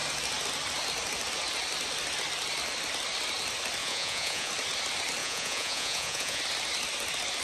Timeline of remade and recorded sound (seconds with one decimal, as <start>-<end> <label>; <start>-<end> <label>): 0.0-3.8 recorded; 3.8-4.5 remade; 4.5-5.2 recorded; 5.2-6.4 remade; 6.4-7.4 recorded